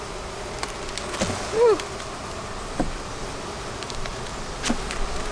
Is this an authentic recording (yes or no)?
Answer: yes